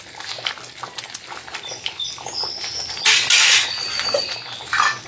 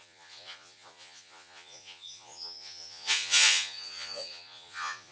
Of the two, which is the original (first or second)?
first